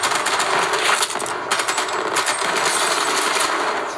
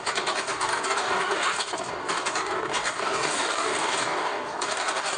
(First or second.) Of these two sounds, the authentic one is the first